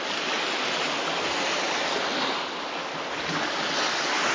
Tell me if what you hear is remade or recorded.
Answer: recorded